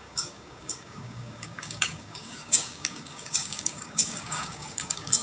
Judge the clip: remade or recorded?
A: remade